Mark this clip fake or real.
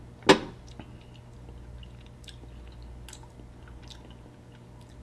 real